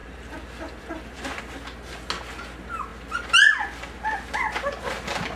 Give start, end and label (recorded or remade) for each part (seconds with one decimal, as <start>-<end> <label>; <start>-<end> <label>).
0.0-1.4 remade; 1.4-5.4 recorded